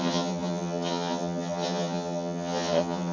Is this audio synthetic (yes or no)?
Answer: yes